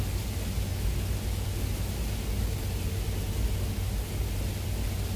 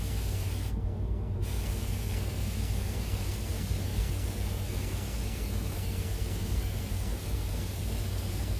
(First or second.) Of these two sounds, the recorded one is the first